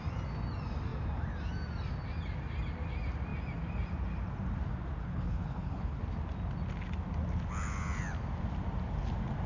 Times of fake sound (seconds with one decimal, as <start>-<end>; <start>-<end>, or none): 5.0-6.0